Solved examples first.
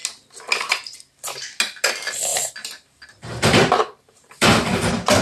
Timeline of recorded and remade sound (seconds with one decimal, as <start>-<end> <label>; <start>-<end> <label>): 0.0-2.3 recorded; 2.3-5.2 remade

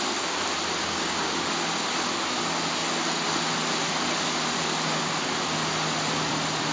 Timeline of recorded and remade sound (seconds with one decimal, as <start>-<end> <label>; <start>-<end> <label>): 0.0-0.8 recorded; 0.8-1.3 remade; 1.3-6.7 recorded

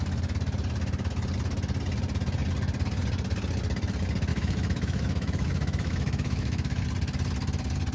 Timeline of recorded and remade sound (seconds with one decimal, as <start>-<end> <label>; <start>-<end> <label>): 0.0-4.3 recorded; 4.3-6.8 remade; 6.8-7.9 recorded

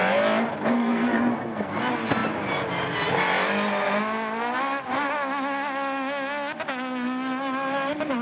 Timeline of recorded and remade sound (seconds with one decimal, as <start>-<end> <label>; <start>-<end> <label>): 0.0-0.7 recorded; 0.7-1.8 remade; 1.8-8.2 recorded